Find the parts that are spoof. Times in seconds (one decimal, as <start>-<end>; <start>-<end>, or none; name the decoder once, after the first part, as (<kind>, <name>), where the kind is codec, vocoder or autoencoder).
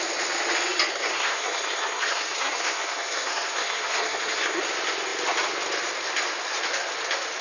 0.9-4.6 (codec, SNAC)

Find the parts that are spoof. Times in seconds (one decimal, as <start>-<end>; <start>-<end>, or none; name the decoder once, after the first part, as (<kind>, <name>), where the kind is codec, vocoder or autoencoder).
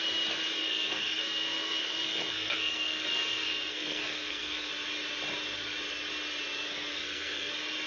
0.6-4.7 (codec, SNAC); 6.9-7.5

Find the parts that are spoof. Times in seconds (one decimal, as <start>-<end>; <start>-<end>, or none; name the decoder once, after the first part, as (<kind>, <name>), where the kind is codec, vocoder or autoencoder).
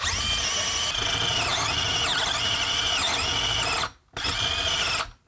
none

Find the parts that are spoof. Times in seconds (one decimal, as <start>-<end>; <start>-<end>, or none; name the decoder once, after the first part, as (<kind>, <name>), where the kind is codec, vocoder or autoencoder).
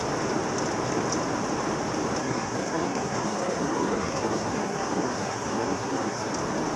2.2-6.3 (codec, SNAC)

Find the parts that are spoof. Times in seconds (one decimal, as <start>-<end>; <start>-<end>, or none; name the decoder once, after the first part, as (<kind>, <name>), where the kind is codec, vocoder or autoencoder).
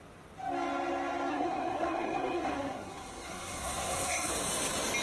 1.3-4.3 (codec, SNAC)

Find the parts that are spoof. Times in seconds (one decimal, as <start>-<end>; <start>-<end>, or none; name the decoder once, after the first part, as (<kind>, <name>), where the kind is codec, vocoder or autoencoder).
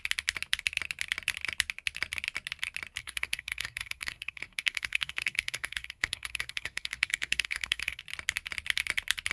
3.0-8.0 (codec, SNAC)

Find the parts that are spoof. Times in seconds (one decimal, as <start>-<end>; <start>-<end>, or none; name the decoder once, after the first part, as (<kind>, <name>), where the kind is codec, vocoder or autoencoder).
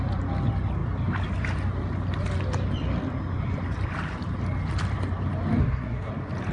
5.6-6.1 (codec, SNAC)